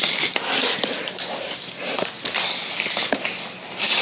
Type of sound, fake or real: real